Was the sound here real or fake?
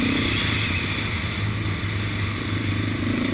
real